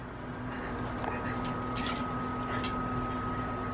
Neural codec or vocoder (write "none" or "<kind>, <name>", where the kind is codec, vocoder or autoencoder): none